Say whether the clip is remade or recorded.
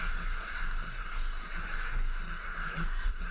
remade